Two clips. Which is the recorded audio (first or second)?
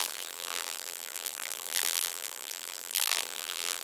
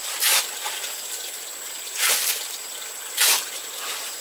second